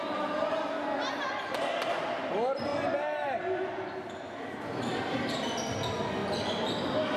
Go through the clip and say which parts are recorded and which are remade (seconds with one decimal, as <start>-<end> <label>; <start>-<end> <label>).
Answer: 0.0-2.7 recorded; 2.7-3.8 remade; 3.8-4.9 recorded; 4.9-5.5 remade; 5.5-7.2 recorded